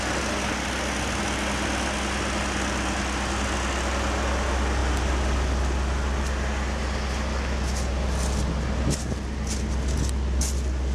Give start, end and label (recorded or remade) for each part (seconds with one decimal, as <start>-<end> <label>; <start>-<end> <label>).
0.0-10.9 recorded